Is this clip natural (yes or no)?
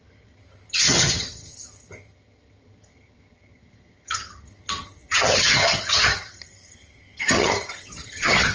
no